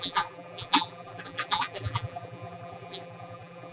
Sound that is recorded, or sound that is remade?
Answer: remade